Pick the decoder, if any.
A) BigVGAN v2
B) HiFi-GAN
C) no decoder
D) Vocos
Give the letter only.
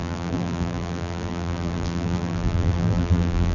A